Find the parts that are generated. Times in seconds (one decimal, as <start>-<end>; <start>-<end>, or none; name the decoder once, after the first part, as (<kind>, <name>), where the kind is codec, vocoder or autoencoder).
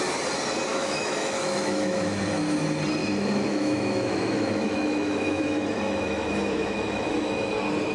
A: 0.7-2.2 (autoencoder, DAC-VAE); 3.0-7.5